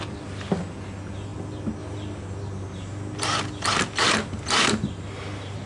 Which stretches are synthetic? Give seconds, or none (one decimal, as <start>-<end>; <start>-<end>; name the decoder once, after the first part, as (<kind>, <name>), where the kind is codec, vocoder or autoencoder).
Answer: none